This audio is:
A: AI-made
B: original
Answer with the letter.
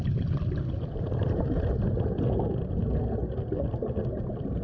B